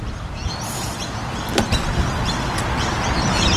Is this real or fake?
real